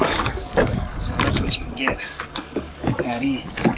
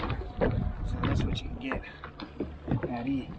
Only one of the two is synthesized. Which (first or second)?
first